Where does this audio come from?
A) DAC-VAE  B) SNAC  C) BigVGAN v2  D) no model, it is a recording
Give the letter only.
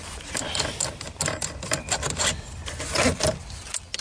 D